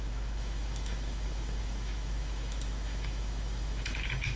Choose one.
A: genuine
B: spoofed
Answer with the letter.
B